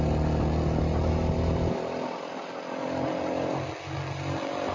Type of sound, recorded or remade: recorded